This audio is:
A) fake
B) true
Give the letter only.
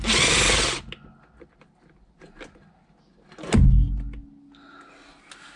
B